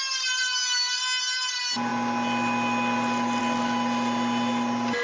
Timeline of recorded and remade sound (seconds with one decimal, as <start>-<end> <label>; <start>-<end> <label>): 0.0-5.0 recorded